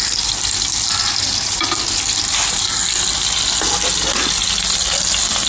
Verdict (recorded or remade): recorded